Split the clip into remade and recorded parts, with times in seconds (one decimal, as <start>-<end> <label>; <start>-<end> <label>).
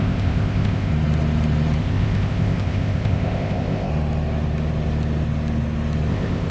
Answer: 0.0-0.9 remade; 0.9-1.8 recorded; 1.8-3.9 remade; 3.9-6.1 recorded; 6.1-6.5 remade